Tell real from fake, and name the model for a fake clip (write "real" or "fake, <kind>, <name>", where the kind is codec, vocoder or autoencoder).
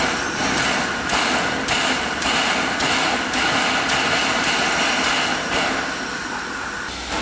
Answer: real